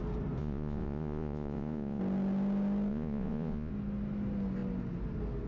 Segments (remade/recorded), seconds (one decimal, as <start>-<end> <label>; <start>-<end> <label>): 0.0-0.4 recorded; 0.4-2.0 remade; 2.0-2.9 recorded; 2.9-3.7 remade; 3.7-5.5 recorded